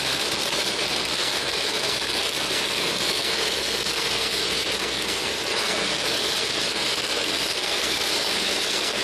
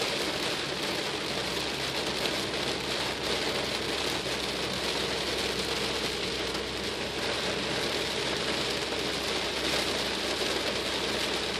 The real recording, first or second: second